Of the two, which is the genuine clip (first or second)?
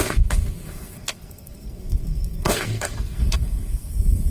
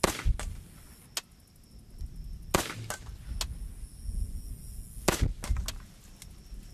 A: second